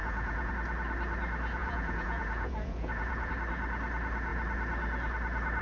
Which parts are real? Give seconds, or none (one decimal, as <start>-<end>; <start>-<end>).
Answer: 0.5-1.6; 3.3-5.6